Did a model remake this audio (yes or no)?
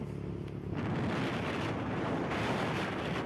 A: no